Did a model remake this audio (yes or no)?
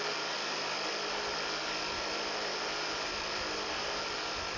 no